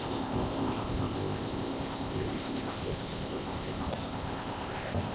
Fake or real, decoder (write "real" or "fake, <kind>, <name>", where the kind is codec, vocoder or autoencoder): fake, codec, ZipCodec